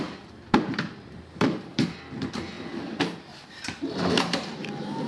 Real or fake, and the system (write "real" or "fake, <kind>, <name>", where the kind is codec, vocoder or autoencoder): fake, vocoder, BigVGAN v2